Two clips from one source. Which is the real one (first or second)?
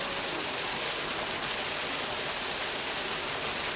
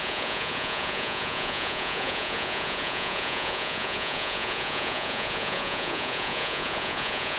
first